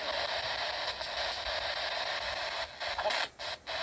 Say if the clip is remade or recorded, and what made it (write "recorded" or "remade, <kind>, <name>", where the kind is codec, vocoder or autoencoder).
recorded